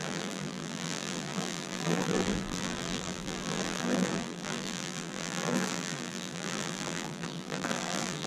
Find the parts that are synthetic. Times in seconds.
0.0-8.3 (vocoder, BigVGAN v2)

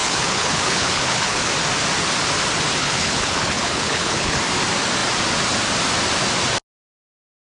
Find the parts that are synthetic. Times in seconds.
0.0-1.5 (codec, HILCodec); 2.8-4.4

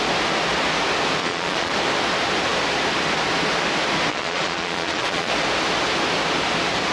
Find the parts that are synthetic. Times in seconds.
1.2-1.7 (vocoder, Vocos); 4.1-5.3

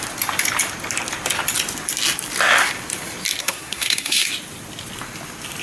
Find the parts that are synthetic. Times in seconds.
3.4-4.3 (codec, SNAC)